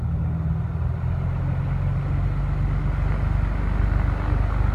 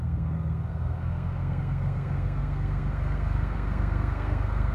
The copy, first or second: second